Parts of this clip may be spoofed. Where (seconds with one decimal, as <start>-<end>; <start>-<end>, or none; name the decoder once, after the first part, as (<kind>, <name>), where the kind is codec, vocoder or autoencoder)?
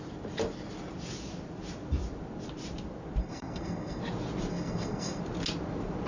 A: 3.2-4.0 (codec, SNAC); 4.5-5.2